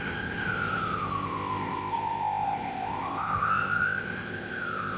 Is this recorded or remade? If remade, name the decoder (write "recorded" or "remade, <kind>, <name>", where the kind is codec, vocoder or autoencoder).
remade, codec, ZipCodec